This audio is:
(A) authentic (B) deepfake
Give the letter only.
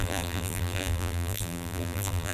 B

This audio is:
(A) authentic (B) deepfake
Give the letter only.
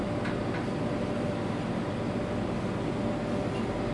A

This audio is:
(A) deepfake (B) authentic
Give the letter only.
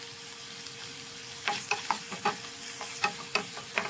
B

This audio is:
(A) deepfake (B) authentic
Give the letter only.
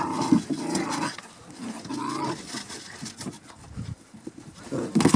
B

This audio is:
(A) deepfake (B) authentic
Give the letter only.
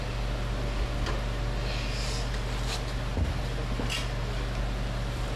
B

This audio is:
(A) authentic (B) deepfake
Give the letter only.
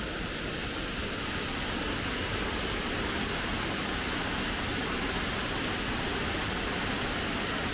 A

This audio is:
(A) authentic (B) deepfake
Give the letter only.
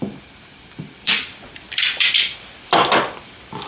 B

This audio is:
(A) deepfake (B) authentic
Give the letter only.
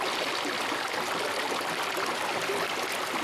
B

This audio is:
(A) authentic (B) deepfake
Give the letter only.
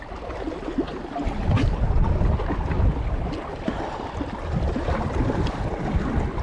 A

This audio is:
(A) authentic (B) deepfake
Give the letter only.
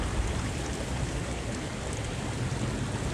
A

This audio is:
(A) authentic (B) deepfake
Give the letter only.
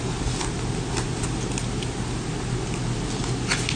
A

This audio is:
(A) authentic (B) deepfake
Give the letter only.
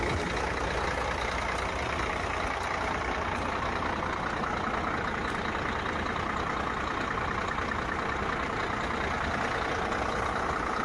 A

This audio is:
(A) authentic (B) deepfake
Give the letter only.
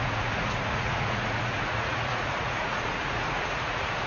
B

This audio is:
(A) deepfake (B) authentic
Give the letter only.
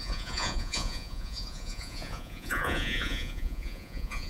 A